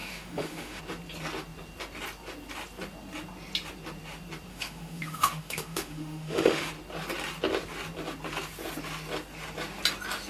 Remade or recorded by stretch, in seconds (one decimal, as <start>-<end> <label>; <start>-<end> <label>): 0.0-0.8 remade; 0.8-4.5 recorded; 4.5-6.7 remade; 6.7-10.3 recorded

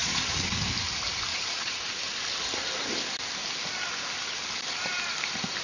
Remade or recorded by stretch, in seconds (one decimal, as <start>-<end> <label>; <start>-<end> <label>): 0.0-0.5 remade; 0.5-1.3 recorded; 1.3-1.9 remade; 1.9-5.6 recorded